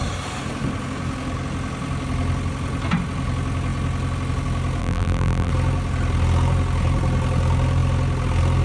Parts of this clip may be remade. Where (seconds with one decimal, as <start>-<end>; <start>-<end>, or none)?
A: 4.8-5.5